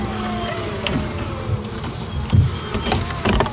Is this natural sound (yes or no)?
yes